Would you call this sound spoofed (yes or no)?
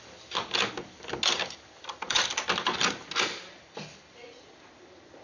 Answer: no